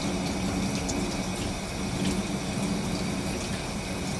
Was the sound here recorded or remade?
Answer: recorded